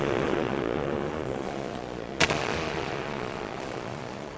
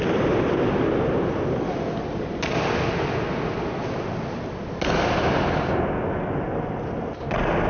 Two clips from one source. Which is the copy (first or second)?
first